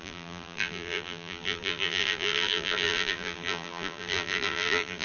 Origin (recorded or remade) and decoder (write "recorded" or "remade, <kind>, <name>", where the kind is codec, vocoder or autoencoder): remade, vocoder, BigVGAN v2